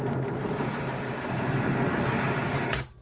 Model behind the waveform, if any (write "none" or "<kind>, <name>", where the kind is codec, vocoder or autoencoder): none